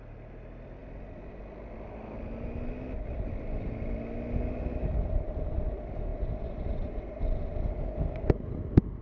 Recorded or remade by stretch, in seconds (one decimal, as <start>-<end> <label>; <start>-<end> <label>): 0.0-9.0 recorded

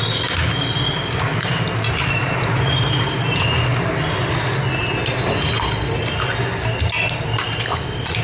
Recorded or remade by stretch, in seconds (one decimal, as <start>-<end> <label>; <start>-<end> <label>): 0.0-8.2 recorded